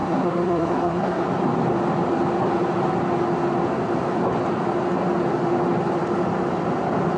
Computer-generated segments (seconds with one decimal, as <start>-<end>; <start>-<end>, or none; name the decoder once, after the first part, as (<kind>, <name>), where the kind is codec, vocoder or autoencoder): 0.0-1.2 (codec, SNAC)